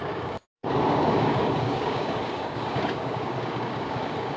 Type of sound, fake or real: fake